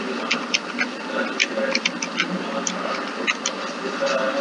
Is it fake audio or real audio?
real